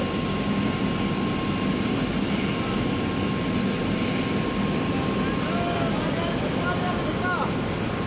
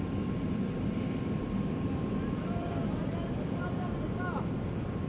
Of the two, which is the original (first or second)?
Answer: first